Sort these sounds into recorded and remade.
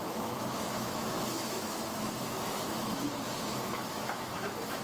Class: remade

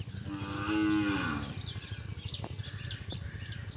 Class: recorded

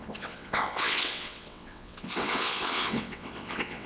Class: remade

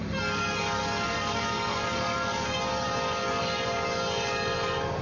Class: remade